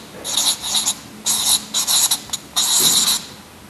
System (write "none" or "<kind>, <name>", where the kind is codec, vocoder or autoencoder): none